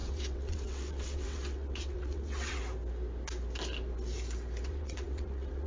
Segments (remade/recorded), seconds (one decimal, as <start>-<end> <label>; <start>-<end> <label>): 0.0-2.6 remade; 2.6-4.6 recorded; 4.6-5.7 remade